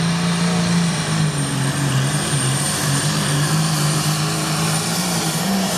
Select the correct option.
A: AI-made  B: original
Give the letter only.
A